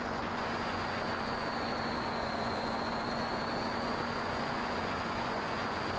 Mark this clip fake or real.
fake